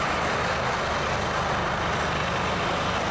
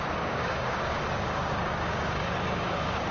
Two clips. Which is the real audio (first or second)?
first